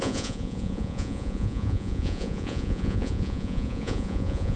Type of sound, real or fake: fake